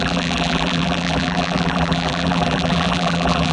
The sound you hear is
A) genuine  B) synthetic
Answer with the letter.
B